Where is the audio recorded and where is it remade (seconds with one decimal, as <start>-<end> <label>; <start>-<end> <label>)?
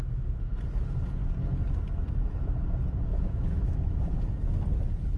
0.0-3.1 recorded; 3.1-4.0 remade; 4.0-5.2 recorded